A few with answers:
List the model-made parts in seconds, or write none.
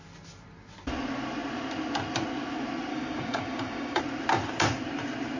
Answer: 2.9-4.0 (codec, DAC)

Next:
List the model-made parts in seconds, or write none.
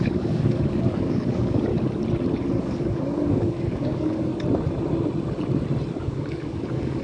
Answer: 0.0-1.7 (codec, DAC); 2.6-4.3; 5.9-7.0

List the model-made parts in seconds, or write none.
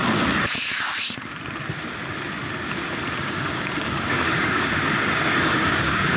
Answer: 3.2-6.2 (codec, DAC)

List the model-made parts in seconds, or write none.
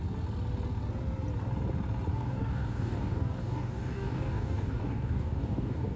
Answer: 2.1-6.0 (codec, DAC)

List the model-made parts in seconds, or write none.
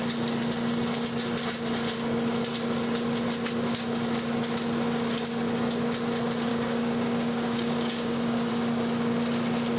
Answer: 6.5-8.5 (codec, DAC)